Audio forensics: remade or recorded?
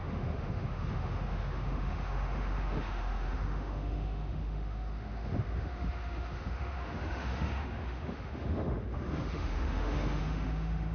remade